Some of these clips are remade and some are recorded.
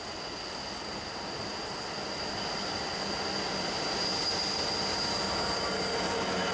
recorded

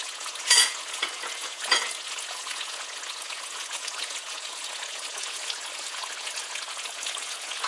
remade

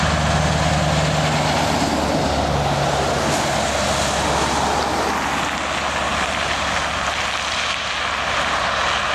recorded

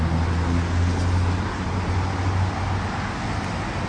recorded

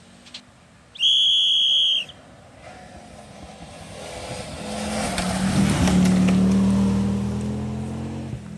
recorded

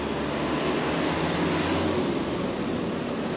recorded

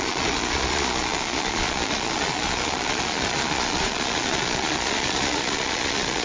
remade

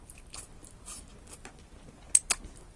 recorded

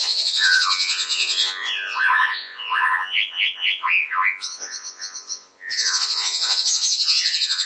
remade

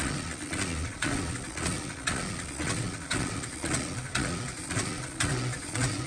remade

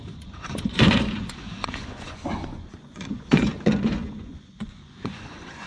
remade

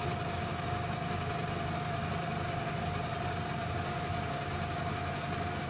recorded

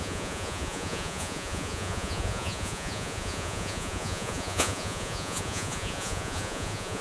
remade